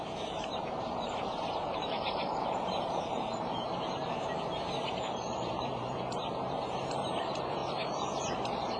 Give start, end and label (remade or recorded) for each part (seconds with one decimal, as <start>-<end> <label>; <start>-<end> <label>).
0.0-7.6 remade; 7.6-8.2 recorded; 8.2-8.8 remade